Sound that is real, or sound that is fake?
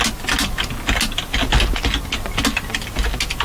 real